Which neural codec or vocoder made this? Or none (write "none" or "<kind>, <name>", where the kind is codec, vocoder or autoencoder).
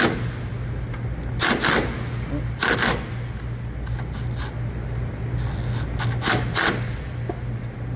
none